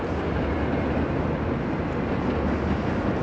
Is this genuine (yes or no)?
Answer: yes